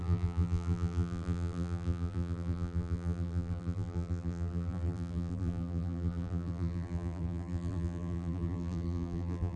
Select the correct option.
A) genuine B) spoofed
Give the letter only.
B